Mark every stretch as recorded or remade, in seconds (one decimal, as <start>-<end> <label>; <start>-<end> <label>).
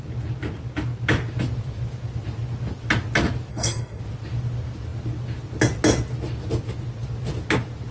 0.0-3.5 recorded; 3.5-4.0 remade; 4.0-7.9 recorded